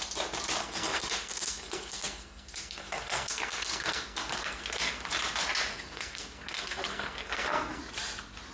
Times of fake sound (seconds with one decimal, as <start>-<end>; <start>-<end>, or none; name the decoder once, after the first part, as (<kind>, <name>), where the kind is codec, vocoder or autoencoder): 0.6-5.1 (codec, SNAC); 5.7-7.8